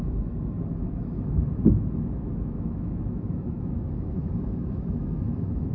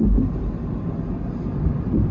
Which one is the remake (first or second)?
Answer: first